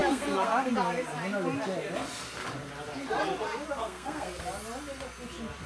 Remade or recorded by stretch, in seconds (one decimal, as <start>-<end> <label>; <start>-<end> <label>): 0.0-0.7 remade; 0.7-3.8 recorded; 3.8-4.4 remade; 4.4-5.7 recorded